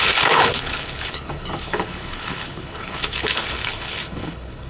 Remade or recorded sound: remade